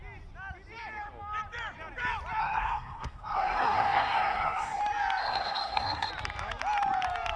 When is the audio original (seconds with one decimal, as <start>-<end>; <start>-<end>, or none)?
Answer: 0.0-2.4; 4.8-5.2; 6.1-7.4